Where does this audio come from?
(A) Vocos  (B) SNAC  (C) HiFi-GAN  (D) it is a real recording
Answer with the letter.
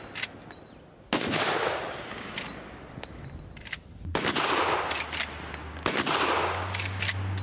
D